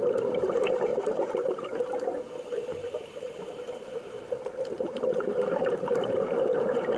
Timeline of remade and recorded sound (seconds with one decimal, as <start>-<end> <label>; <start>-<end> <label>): 0.0-7.0 remade